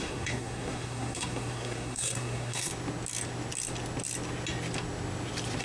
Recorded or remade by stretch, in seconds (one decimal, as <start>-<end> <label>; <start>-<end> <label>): 0.0-2.7 remade; 2.7-5.6 recorded

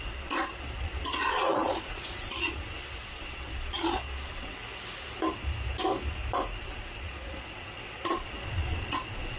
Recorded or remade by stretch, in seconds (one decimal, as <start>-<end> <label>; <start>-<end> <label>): 0.0-4.5 remade; 4.5-6.6 recorded; 6.6-9.4 remade

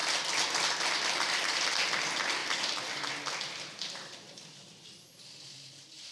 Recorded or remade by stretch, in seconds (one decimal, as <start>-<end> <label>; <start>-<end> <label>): 0.0-6.1 recorded

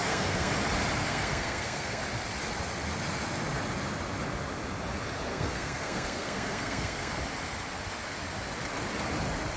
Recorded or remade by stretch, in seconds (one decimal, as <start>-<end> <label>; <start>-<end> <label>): 0.0-0.5 remade; 0.5-1.0 recorded; 1.0-2.0 remade; 2.0-5.3 recorded; 5.3-7.2 remade; 7.2-9.6 recorded

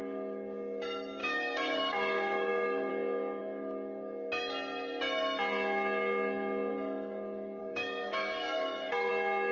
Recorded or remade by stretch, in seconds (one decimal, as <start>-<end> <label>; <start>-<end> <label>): 0.0-1.2 recorded; 1.2-2.9 remade; 2.9-7.6 recorded; 7.6-9.1 remade; 9.1-9.5 recorded

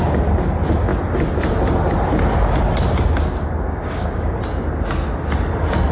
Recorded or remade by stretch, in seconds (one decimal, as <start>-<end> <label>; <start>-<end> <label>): 0.0-3.7 recorded; 3.7-4.4 remade; 4.4-5.9 recorded